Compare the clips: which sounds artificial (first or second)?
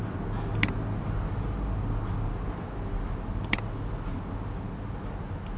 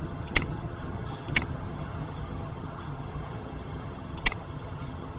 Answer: second